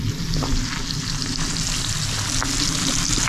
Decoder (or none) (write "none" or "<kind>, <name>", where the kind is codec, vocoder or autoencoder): none